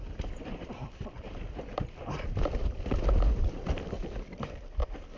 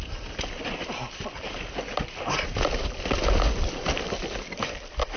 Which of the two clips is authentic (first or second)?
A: second